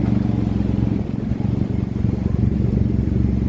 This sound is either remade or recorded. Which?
recorded